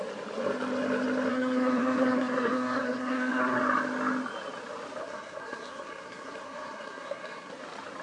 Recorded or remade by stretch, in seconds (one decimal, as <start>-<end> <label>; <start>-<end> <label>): 0.0-1.3 recorded; 1.3-3.6 remade; 3.6-5.0 recorded; 5.0-7.5 remade; 7.5-8.0 recorded